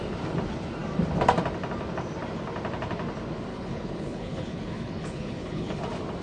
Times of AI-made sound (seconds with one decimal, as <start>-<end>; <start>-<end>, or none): 3.5-5.8

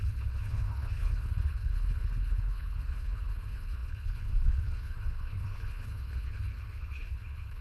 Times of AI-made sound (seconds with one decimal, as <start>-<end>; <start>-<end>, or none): 0.0-7.6

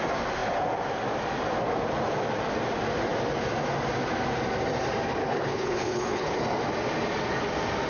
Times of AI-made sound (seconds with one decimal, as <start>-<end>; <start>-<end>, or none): 5.2-6.4

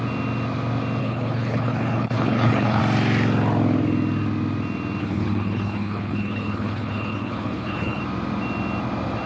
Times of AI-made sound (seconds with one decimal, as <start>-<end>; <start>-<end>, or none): 1.0-2.8; 5.0-8.0

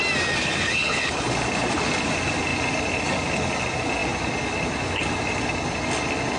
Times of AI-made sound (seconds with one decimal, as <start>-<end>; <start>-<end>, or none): 0.4-1.3

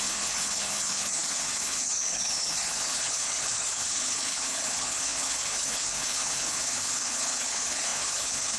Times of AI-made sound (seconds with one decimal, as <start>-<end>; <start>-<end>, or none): 0.0-8.6

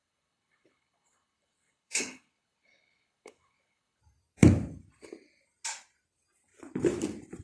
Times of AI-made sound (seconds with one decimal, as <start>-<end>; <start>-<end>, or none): 0.0-4.0